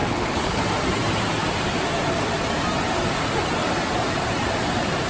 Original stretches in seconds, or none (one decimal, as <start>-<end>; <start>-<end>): 0.6-5.1